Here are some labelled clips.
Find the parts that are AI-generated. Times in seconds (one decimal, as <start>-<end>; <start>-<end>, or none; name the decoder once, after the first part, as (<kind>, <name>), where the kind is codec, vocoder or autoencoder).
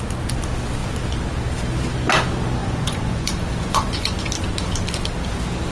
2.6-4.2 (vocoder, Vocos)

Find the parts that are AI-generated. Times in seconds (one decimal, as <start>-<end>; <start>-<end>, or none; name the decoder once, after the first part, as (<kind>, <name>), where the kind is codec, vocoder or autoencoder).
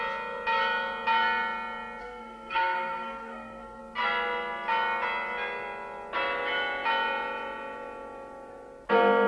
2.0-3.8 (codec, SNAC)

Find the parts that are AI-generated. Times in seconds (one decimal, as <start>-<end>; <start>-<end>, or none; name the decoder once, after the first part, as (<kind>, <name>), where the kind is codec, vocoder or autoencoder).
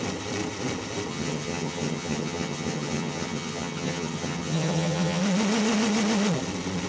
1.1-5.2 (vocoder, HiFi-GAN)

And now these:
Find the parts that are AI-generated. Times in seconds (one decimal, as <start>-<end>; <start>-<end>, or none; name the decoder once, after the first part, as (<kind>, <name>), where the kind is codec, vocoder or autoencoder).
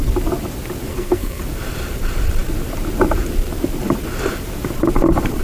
0.9-1.4 (codec, SNAC)